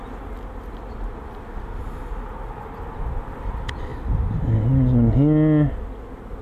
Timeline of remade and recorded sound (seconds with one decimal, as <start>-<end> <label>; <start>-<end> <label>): 0.0-6.4 recorded